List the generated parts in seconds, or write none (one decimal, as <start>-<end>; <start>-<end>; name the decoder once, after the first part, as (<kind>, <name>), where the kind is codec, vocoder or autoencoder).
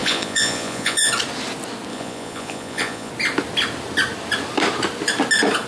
0.0-1.1 (vocoder, Vocos); 1.9-3.1